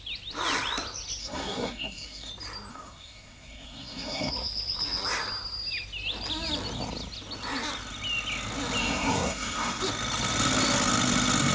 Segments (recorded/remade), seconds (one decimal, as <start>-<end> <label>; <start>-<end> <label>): 0.0-1.2 recorded; 1.2-2.3 remade; 2.3-2.7 recorded; 2.7-4.3 remade; 4.3-8.8 recorded; 8.8-9.8 remade; 9.8-11.5 recorded